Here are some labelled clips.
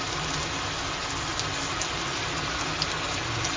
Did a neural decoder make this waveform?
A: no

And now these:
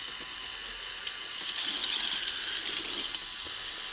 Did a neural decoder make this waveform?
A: no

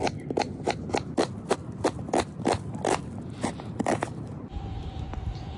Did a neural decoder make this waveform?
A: no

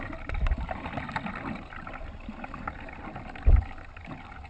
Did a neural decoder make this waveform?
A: no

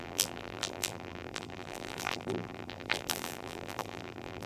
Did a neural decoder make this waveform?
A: yes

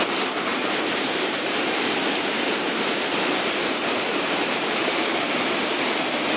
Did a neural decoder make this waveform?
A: yes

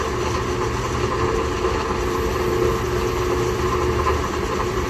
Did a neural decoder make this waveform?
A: no